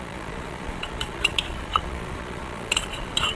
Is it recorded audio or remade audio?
remade